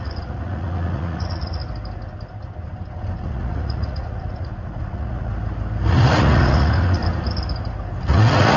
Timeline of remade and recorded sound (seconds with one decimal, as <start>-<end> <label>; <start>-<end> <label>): 0.0-1.6 remade; 1.6-3.2 recorded; 3.2-5.3 remade; 5.3-5.9 recorded; 5.9-7.0 remade; 7.0-8.0 recorded; 8.0-8.6 remade